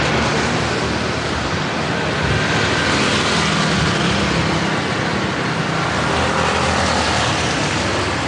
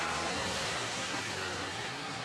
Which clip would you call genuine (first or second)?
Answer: first